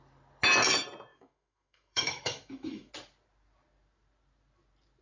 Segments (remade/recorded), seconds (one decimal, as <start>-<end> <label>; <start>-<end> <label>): 0.0-1.1 recorded; 1.1-2.9 remade; 2.9-5.0 recorded